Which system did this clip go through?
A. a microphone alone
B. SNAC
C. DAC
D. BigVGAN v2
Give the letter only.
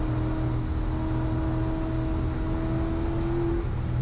A